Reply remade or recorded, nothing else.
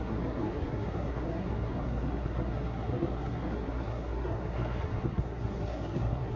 remade